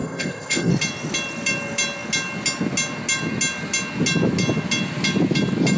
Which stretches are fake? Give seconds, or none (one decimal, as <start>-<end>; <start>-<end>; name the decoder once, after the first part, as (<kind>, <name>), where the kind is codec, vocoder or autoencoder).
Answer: 0.0-0.7 (codec, ZipCodec)